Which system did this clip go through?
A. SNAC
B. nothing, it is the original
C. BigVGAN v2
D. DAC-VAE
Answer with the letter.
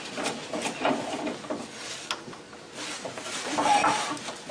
B